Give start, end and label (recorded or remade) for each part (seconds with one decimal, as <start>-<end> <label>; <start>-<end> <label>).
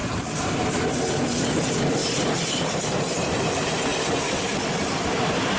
0.0-0.9 remade; 0.9-2.0 recorded; 2.0-2.6 remade; 2.6-3.9 recorded; 3.9-5.6 remade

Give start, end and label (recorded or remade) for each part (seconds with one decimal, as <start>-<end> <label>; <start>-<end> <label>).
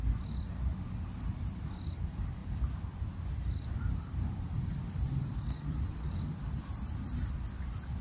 0.0-0.5 recorded; 0.5-2.4 remade; 2.4-4.0 recorded; 4.0-8.0 remade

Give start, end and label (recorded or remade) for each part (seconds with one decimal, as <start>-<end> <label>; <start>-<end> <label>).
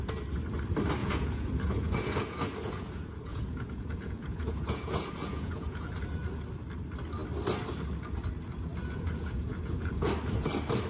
0.0-1.0 recorded; 1.0-5.9 remade; 5.9-8.7 recorded; 8.7-10.1 remade; 10.1-10.9 recorded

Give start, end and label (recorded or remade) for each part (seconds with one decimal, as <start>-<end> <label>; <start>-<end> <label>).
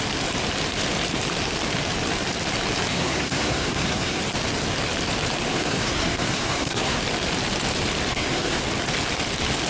0.0-2.9 recorded; 2.9-4.2 remade; 4.2-5.5 recorded; 5.5-7.0 remade; 7.0-8.1 recorded; 8.1-8.6 remade; 8.6-9.7 recorded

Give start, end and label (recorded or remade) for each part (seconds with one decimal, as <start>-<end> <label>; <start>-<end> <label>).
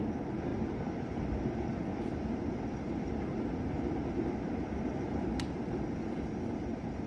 0.0-1.9 recorded; 1.9-6.2 remade; 6.2-7.1 recorded